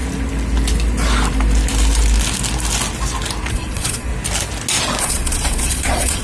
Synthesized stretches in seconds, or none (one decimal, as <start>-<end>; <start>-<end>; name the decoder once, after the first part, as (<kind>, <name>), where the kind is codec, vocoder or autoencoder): 3.5-4.1 (vocoder, Vocos); 5.0-6.2